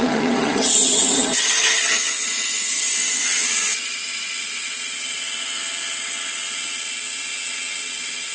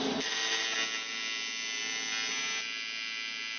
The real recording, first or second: second